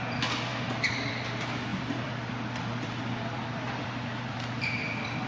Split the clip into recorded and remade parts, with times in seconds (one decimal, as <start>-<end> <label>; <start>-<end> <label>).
0.0-1.7 recorded; 1.7-5.3 remade